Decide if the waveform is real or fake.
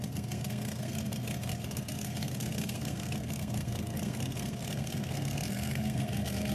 fake